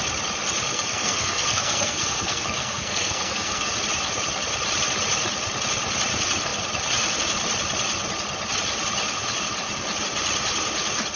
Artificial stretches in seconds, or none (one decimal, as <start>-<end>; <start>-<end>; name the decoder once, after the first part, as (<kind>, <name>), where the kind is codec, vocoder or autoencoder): 0.7-3.7 (codec, SNAC)